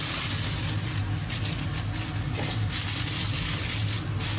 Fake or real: real